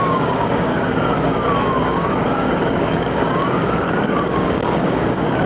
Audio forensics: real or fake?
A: fake